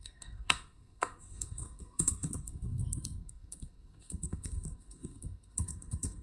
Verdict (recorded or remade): remade